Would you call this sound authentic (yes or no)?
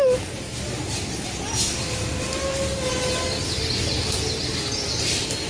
yes